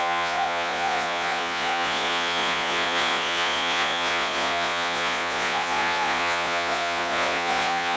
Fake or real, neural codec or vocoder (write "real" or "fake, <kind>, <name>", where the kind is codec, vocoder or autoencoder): fake, vocoder, Vocos